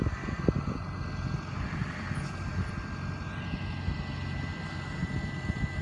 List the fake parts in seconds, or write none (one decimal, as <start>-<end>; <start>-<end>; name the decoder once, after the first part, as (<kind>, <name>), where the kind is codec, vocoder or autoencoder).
none